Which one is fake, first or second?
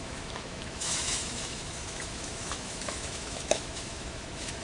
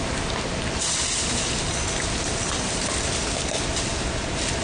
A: first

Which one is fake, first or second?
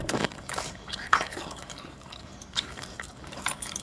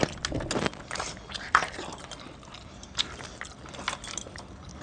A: first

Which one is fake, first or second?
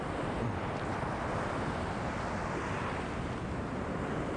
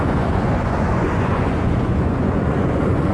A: second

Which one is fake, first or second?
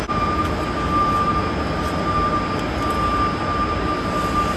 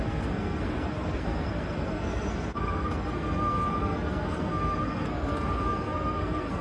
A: second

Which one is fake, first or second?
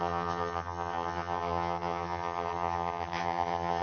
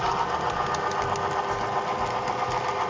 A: first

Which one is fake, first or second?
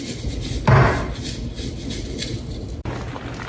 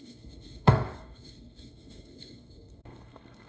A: second